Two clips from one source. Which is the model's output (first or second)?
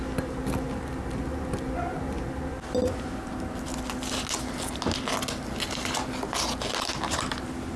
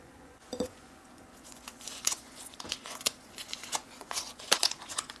second